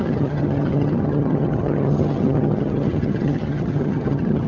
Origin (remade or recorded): remade